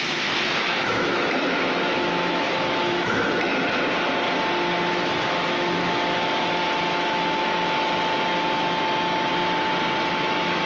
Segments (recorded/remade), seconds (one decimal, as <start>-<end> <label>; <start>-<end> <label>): 0.0-3.5 remade; 3.5-4.9 recorded; 4.9-9.3 remade; 9.3-10.1 recorded; 10.1-10.7 remade